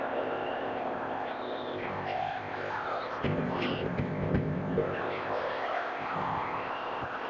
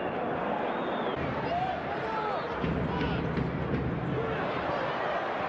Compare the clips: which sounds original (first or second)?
second